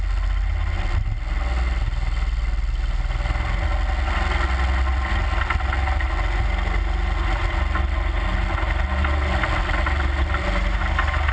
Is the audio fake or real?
real